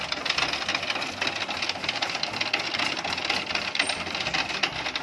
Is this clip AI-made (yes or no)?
no